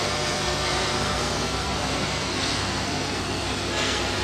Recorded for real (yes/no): no